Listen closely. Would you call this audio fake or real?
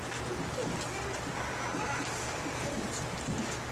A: real